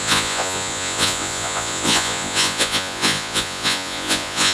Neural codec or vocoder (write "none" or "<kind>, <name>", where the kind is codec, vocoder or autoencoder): vocoder, Vocos